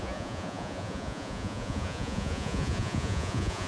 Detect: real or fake fake